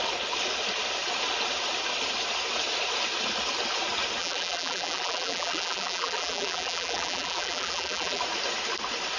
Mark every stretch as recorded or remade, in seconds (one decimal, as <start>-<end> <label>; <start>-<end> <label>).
0.0-4.2 recorded; 4.2-8.2 remade; 8.2-9.2 recorded